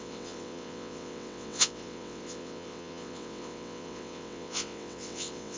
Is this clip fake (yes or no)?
yes